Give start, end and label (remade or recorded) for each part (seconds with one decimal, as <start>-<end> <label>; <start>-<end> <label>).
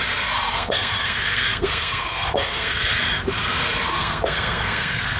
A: 0.0-0.5 recorded; 0.5-3.0 remade; 3.0-3.9 recorded; 3.9-5.2 remade